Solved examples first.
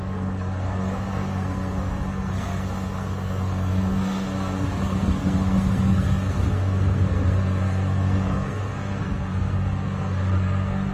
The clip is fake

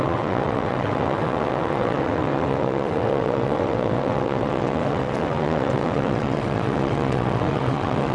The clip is fake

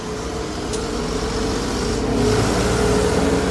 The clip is real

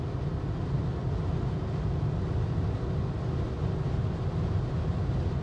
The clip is real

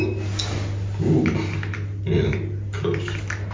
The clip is real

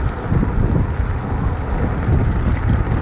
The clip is real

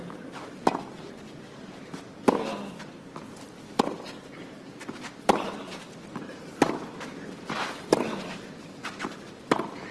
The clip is real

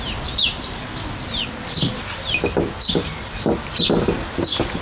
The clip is real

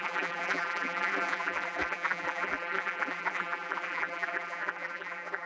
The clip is fake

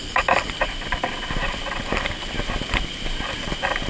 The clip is real